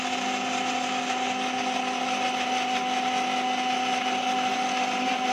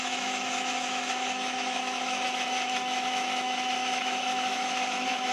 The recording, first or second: first